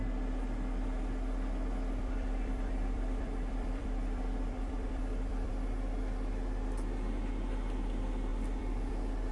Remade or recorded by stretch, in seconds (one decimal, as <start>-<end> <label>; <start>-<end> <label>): 0.0-2.0 recorded; 2.0-5.5 remade; 5.5-8.3 recorded; 8.3-8.9 remade; 8.9-9.3 recorded